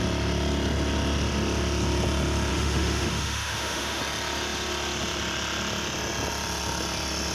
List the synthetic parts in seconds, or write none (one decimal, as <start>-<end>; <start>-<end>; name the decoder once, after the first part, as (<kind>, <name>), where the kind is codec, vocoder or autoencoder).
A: 2.5-4.0 (autoencoder, DAC-VAE)